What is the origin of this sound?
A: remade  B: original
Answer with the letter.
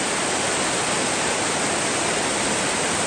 B